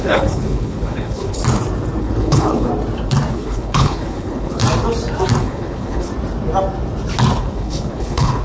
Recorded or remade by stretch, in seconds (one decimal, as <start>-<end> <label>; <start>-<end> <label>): 0.0-1.4 remade; 1.4-2.0 recorded; 2.0-2.7 remade; 2.7-3.3 recorded; 3.3-4.6 remade; 4.6-5.4 recorded; 5.4-6.1 remade; 6.1-7.4 recorded; 7.4-8.4 remade